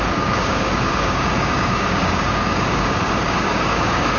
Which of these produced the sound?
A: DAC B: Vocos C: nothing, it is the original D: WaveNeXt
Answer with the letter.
A